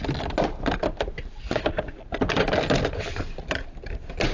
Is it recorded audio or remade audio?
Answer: recorded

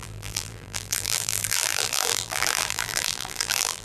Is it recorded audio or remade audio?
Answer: remade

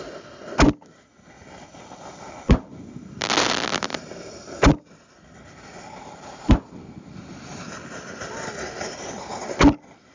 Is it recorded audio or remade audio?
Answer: recorded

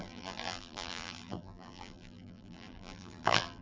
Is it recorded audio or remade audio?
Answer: remade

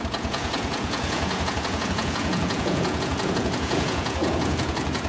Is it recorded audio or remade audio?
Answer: remade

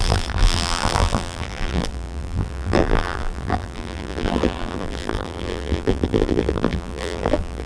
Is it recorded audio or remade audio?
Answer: remade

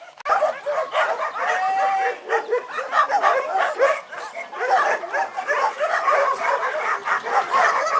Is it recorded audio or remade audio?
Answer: recorded